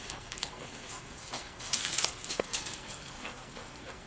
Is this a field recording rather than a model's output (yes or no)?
no